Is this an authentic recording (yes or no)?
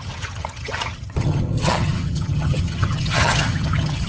no